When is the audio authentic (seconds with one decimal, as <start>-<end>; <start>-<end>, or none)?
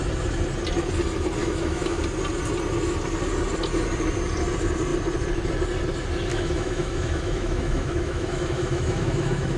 0.0-1.4; 2.0-6.3